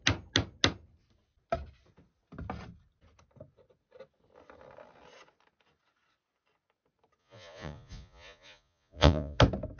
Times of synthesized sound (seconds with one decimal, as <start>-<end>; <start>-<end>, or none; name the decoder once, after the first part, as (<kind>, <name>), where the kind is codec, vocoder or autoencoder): 7.2-9.4 (vocoder, Vocos)